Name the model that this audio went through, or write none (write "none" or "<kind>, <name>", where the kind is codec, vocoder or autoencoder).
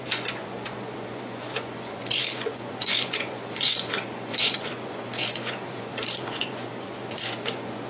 vocoder, Vocos